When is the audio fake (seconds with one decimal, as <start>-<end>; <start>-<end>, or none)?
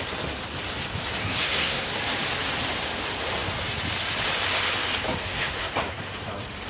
1.2-1.9; 5.2-6.0